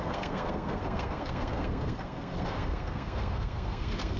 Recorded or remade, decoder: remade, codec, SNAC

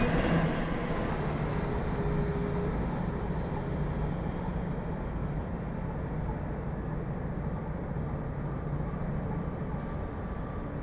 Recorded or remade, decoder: recorded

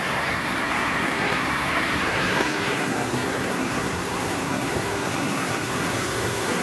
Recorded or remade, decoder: remade, codec, SNAC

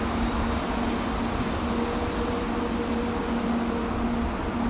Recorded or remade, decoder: recorded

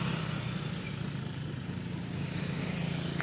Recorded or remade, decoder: recorded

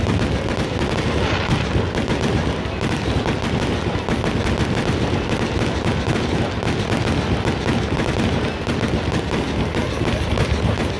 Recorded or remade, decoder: recorded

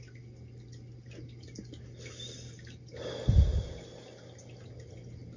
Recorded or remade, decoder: recorded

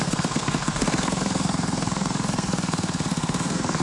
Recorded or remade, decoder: remade, codec, SNAC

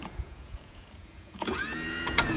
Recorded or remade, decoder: remade, vocoder, Vocos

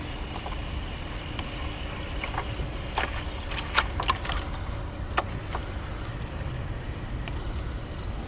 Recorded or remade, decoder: recorded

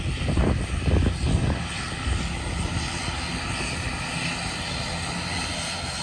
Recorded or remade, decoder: recorded